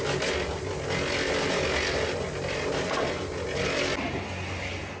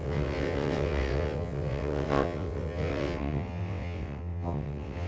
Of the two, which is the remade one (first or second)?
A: second